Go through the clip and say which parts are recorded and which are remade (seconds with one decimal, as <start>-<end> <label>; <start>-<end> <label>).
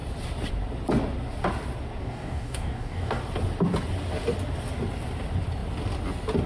0.0-2.0 recorded; 2.0-3.2 remade; 3.2-6.5 recorded